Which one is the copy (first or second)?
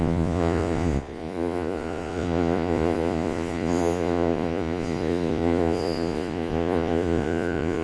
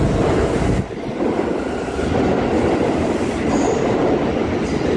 first